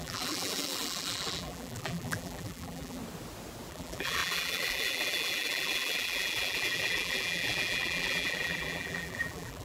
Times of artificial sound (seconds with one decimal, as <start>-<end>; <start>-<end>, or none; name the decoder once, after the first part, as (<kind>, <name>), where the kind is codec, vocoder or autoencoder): 0.0-3.0 (vocoder, BigVGAN v2); 3.7-9.6